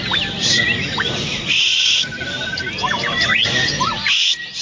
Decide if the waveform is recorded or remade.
recorded